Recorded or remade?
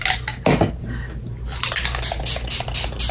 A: recorded